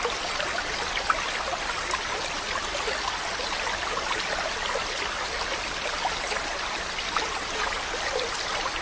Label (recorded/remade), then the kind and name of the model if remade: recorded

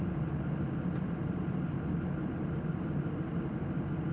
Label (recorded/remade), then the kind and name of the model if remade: recorded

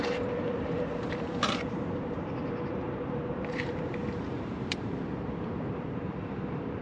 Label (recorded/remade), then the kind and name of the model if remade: remade, vocoder, BigVGAN v2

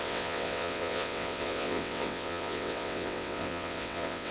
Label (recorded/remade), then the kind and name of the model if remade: remade, vocoder, WaveNeXt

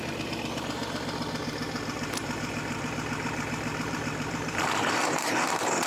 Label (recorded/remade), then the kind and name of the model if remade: remade, vocoder, BigVGAN v2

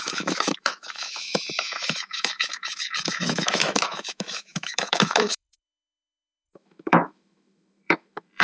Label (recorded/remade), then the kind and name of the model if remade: remade, autoencoder, DAC-VAE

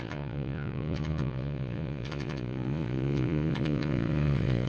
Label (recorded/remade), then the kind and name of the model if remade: remade, vocoder, Vocos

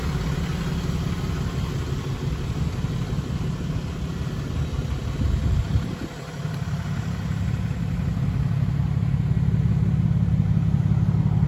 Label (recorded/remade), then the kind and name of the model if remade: recorded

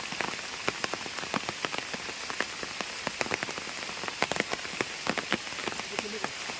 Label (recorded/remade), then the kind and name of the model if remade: recorded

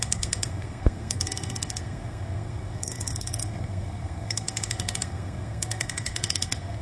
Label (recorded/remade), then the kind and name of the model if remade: remade, codec, SNAC